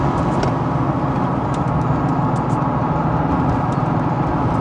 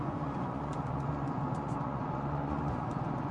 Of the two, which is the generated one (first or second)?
second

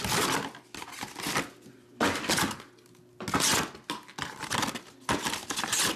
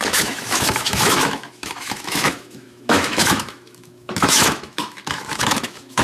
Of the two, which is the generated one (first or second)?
second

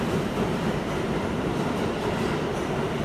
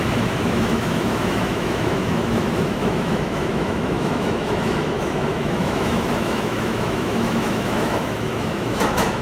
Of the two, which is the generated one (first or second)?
second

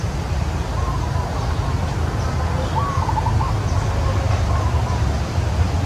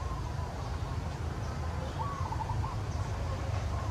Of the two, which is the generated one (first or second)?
second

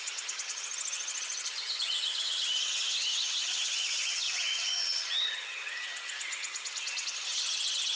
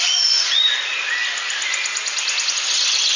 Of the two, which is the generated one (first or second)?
first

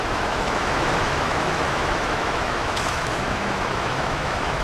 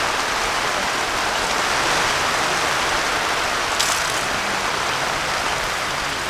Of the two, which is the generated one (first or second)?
first